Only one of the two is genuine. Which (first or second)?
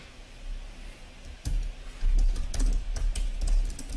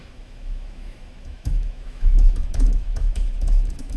first